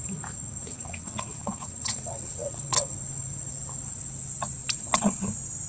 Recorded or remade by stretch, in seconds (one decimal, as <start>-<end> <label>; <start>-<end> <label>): 0.0-0.6 recorded; 0.6-2.9 remade; 2.9-4.6 recorded; 4.6-5.2 remade; 5.2-5.7 recorded